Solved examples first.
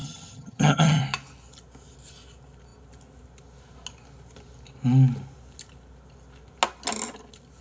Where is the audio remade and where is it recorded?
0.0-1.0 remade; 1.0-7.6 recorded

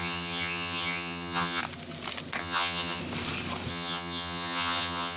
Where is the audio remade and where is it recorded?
0.0-1.6 remade; 1.6-2.4 recorded; 2.4-3.0 remade; 3.0-3.7 recorded; 3.7-5.2 remade

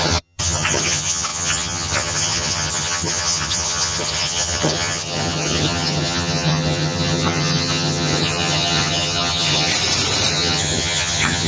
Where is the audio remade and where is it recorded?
0.0-9.7 remade; 9.7-10.3 recorded; 10.3-11.5 remade